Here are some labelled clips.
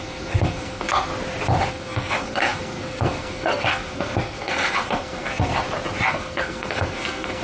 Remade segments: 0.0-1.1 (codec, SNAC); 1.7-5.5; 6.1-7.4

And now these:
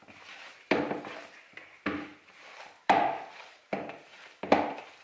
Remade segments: none

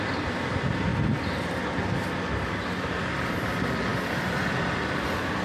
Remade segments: 0.0-0.9 (vocoder, BigVGAN v2); 3.3-5.4

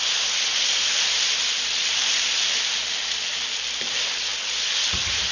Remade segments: none

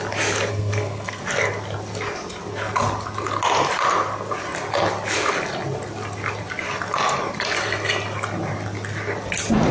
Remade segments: 0.5-1.2 (codec, SNAC)

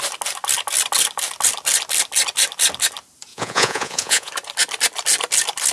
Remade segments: 3.3-4.3 (vocoder, Vocos)

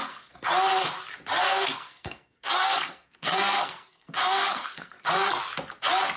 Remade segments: 0.0-0.5 (codec, SNAC); 1.4-5.1